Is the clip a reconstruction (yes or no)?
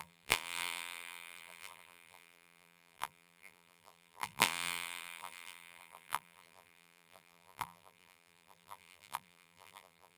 yes